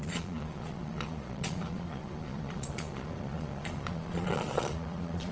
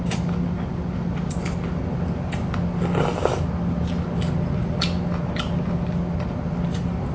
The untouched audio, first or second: second